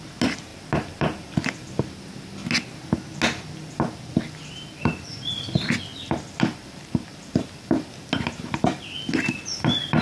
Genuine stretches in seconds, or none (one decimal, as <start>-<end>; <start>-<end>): 0.0-0.5; 1.8-5.9; 7.9-10.0